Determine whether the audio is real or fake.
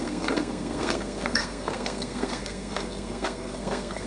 fake